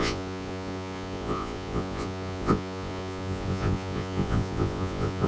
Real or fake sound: fake